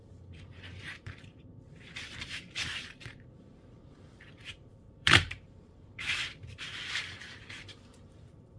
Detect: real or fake fake